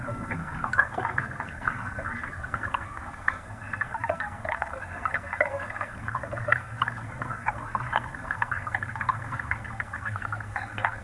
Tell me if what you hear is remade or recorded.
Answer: remade